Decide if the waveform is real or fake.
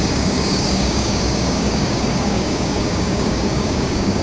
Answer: fake